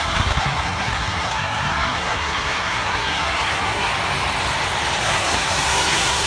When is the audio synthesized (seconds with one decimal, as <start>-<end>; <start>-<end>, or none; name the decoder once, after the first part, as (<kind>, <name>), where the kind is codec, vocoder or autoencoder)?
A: 0.0-3.9 (codec, SNAC); 5.0-6.3